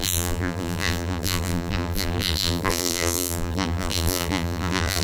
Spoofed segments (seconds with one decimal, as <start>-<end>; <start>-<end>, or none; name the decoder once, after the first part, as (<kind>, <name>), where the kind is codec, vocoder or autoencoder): 0.0-5.0 (vocoder, BigVGAN v2)